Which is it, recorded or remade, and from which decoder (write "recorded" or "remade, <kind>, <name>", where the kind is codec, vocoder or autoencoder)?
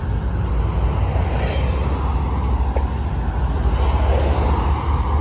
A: recorded